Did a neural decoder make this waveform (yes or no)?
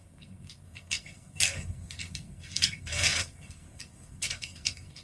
yes